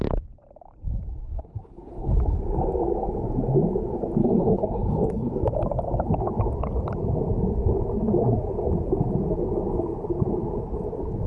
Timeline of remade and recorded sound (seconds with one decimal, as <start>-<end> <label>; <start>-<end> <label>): 0.0-1.2 recorded; 1.2-2.2 remade; 2.2-4.2 recorded; 4.2-5.3 remade; 5.3-11.3 recorded